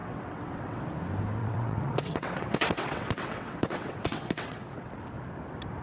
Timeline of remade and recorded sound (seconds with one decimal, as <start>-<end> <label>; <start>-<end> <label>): 0.0-0.8 remade; 0.8-1.4 recorded; 1.4-4.9 remade; 4.9-5.8 recorded